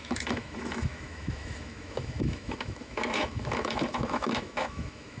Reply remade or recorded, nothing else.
remade